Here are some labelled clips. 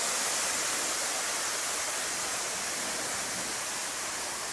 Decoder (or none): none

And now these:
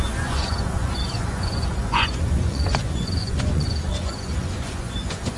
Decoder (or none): vocoder, Vocos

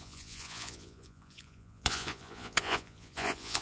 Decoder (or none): vocoder, Vocos